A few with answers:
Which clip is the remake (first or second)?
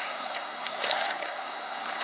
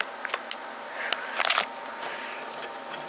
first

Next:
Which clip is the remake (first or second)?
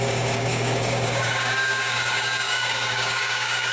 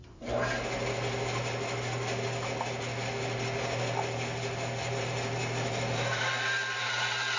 first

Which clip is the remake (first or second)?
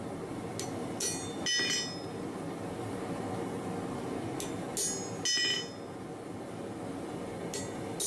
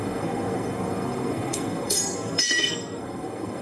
second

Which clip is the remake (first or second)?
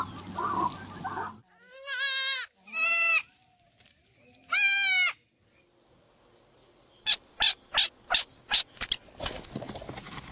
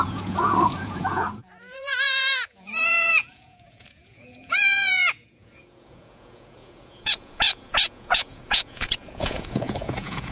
second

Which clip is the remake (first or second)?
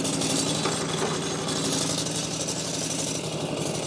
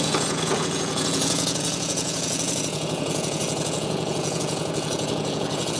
second